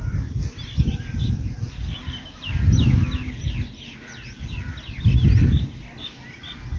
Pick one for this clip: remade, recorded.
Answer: recorded